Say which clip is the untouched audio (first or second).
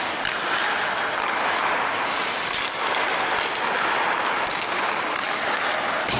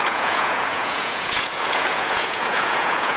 first